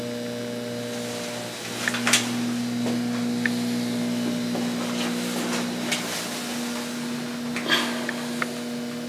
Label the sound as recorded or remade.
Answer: recorded